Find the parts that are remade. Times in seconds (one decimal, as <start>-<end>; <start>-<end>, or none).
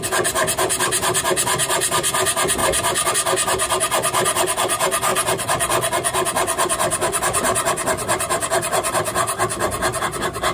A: 2.6-3.1; 5.1-10.0